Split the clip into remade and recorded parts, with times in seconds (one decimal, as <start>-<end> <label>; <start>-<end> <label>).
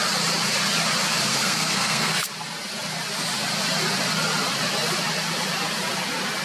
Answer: 0.0-1.3 recorded; 1.3-2.3 remade; 2.3-6.4 recorded